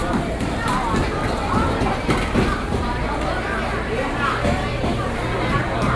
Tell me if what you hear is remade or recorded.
recorded